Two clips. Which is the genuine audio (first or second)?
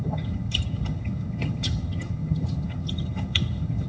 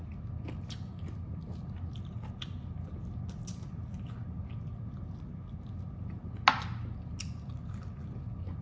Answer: second